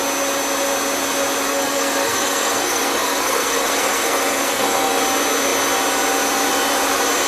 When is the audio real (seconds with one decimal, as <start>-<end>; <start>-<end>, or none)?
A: 0.0-1.5; 5.0-7.3